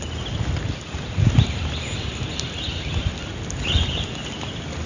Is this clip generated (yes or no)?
no